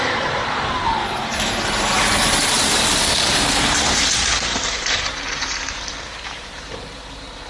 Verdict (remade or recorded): remade